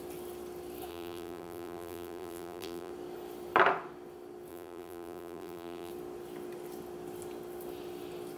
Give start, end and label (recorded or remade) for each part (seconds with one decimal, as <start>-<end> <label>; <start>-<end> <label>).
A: 0.0-0.9 recorded; 0.9-2.9 remade; 2.9-4.5 recorded; 4.5-5.9 remade; 5.9-8.4 recorded